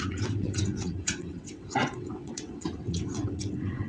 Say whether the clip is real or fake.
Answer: fake